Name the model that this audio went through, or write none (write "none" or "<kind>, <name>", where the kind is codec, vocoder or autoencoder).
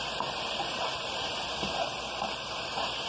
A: vocoder, BigVGAN v2